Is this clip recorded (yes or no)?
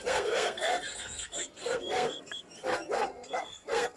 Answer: no